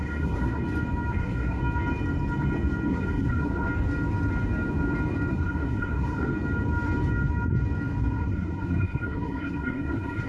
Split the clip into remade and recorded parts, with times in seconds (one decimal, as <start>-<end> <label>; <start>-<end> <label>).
0.0-0.6 remade; 0.6-1.2 recorded; 1.2-1.6 remade; 1.6-2.9 recorded; 2.9-3.7 remade; 3.7-5.3 recorded; 5.3-6.3 remade; 6.3-8.0 recorded; 8.0-10.3 remade